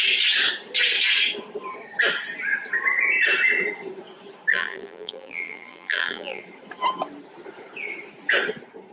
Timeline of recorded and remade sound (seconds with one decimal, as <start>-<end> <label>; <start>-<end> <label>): 0.0-4.5 recorded; 4.5-6.4 remade; 6.4-8.9 recorded